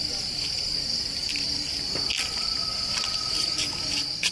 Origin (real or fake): real